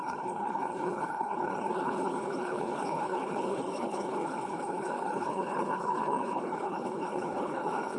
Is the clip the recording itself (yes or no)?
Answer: no